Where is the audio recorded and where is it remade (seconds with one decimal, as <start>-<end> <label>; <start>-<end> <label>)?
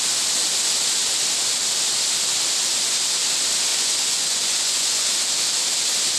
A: 0.0-3.7 recorded; 3.7-5.1 remade; 5.1-6.2 recorded